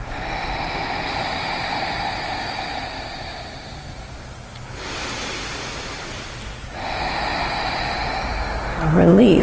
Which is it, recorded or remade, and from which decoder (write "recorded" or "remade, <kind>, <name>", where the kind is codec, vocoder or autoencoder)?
recorded